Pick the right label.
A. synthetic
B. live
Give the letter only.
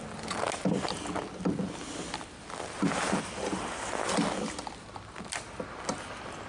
B